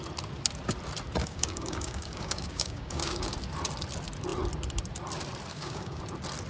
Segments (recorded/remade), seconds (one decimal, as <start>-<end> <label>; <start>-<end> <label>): 0.0-1.2 recorded; 1.2-3.3 remade; 3.3-5.5 recorded; 5.5-6.0 remade; 6.0-6.5 recorded